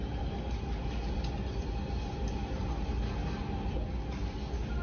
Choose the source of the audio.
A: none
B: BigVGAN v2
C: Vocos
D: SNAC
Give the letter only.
A